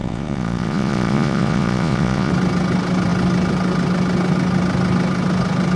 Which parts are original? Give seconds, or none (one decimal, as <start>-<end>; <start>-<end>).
2.3-5.8